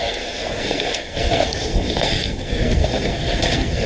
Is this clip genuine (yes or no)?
no